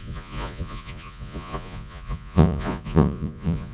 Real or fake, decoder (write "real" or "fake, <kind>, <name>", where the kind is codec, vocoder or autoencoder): fake, vocoder, Vocos